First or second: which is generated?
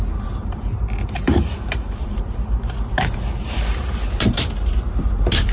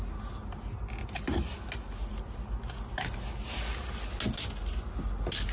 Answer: first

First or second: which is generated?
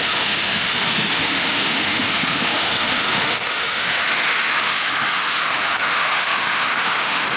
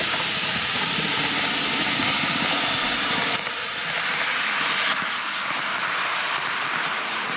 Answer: first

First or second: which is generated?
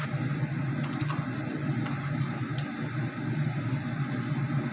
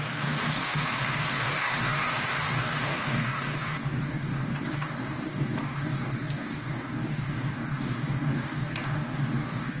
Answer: second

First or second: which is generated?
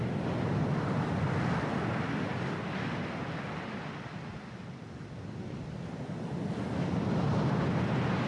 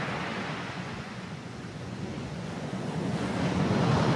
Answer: second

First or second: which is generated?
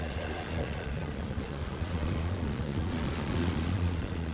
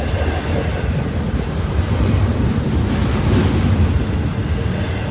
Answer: first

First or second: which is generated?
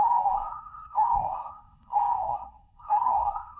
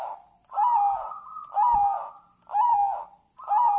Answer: first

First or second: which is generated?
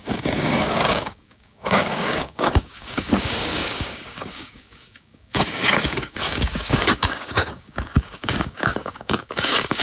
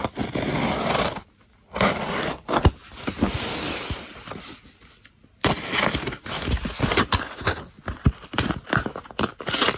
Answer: first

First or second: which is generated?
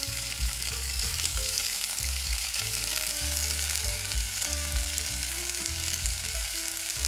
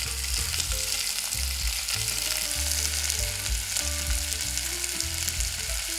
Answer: first